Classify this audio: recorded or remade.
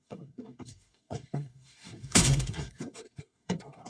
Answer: remade